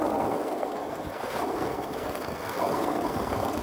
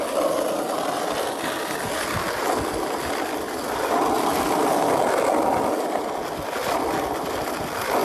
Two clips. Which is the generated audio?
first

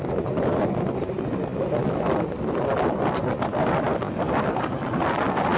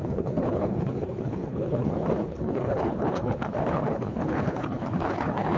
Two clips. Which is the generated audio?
second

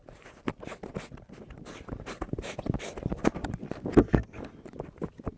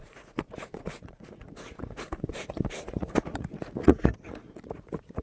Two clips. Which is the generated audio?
second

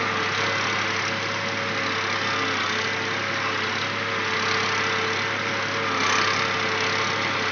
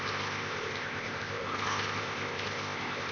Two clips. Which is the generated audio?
second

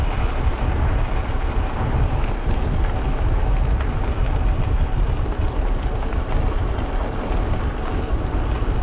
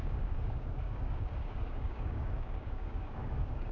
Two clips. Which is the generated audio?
second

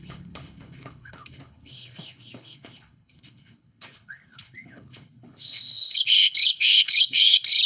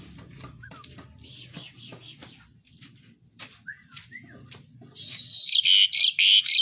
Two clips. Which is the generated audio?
first